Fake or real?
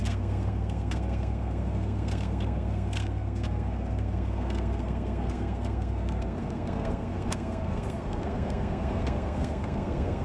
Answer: fake